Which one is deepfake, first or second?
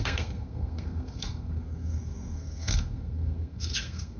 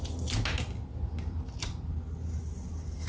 first